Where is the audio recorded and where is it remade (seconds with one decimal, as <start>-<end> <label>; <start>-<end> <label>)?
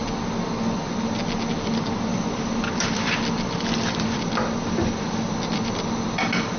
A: 0.0-2.1 recorded; 2.1-6.1 remade; 6.1-6.6 recorded